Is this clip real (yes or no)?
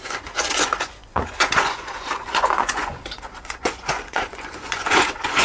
no